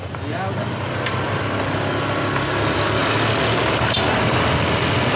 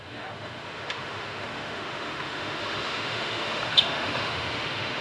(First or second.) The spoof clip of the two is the second